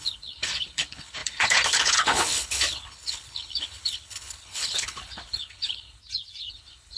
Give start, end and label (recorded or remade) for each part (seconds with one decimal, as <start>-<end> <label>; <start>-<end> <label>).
0.0-6.0 remade; 6.0-6.5 recorded; 6.5-7.0 remade